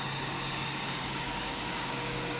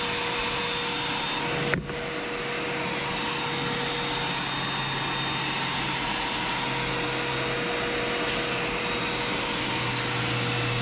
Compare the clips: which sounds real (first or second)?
second